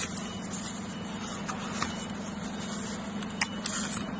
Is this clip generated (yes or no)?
no